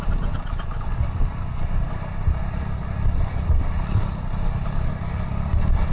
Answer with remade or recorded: recorded